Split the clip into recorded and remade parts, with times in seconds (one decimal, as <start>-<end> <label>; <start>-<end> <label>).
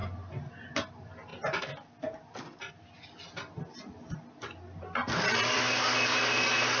0.0-5.0 recorded; 5.0-5.6 remade; 5.6-6.8 recorded